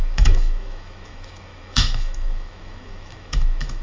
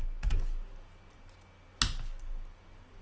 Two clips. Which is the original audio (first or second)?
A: second